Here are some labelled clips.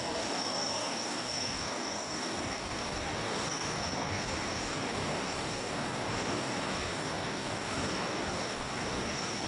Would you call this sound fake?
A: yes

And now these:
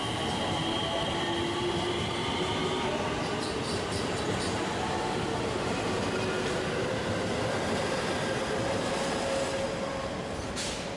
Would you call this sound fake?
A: no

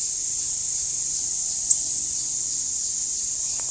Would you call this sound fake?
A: no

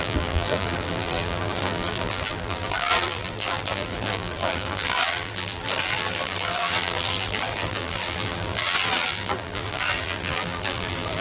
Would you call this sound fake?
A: yes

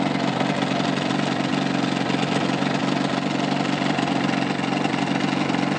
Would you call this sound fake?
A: no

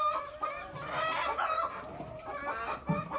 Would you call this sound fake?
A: no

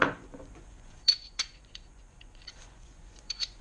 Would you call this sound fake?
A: yes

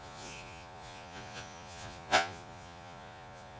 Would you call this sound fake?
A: yes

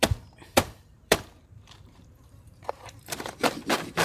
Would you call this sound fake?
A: yes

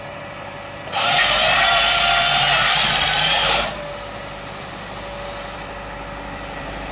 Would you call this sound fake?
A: yes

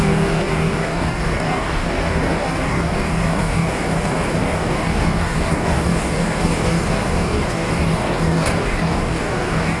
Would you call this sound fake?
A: yes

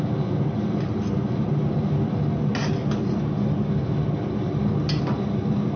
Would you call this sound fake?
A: no